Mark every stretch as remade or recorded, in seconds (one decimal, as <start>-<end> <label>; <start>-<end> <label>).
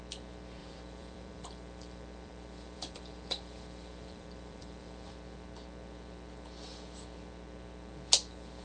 0.0-0.6 recorded; 0.6-5.1 remade; 5.1-8.6 recorded